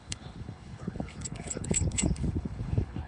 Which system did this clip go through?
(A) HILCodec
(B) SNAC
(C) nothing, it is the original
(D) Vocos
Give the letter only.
A